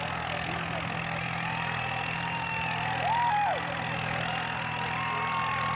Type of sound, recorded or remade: recorded